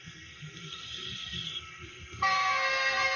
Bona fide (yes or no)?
no